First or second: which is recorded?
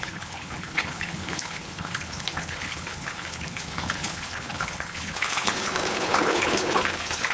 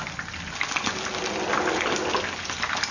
second